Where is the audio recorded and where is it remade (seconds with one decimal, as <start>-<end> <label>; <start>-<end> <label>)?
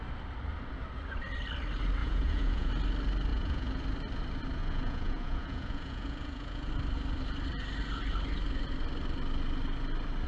0.0-2.0 recorded; 2.0-2.7 remade; 2.7-3.3 recorded; 3.3-3.8 remade; 3.8-4.6 recorded; 4.6-6.7 remade; 6.7-10.3 recorded